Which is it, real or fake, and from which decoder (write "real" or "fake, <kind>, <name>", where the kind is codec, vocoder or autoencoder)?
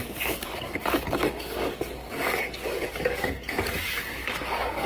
fake, codec, DAC